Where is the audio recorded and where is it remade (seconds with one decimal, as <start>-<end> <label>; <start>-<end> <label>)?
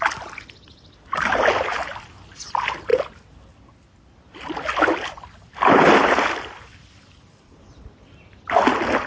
0.0-2.9 recorded; 2.9-3.4 remade; 3.4-9.1 recorded